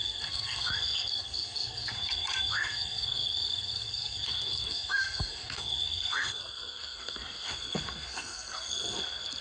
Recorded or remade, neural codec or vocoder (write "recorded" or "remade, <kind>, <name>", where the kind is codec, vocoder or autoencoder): remade, codec, SNAC